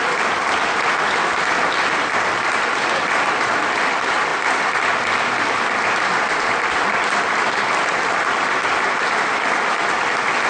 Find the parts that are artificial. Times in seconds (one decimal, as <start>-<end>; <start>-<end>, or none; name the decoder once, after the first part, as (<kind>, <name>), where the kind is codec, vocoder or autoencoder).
none